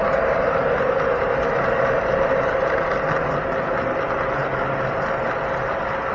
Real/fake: real